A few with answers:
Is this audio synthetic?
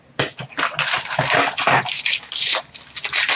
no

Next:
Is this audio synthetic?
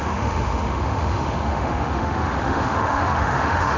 yes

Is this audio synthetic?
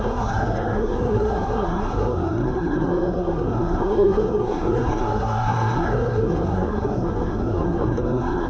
yes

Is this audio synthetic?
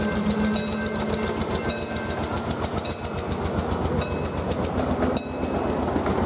no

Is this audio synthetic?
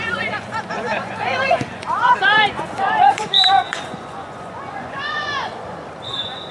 yes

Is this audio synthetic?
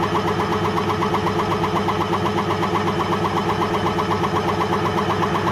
no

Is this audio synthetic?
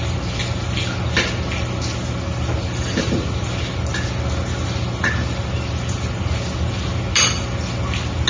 no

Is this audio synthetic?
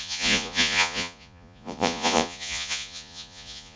yes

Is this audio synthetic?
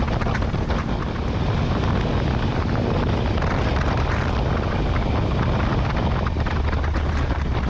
no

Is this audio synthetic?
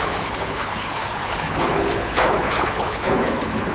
yes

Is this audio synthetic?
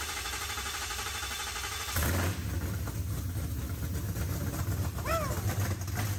no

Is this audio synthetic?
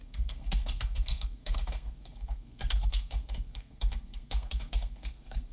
yes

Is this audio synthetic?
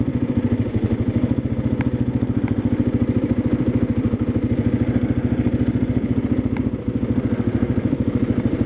yes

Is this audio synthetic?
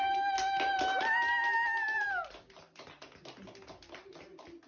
no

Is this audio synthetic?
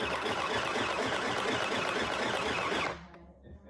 no